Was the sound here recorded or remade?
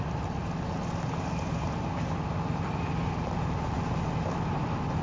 recorded